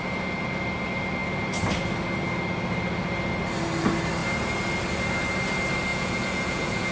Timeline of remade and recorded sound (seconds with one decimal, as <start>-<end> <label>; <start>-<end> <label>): 0.0-5.9 recorded; 5.9-6.9 remade